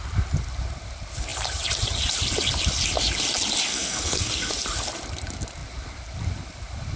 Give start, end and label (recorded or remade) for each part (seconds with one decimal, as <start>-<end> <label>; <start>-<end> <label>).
0.0-3.7 recorded; 3.7-4.5 remade; 4.5-7.0 recorded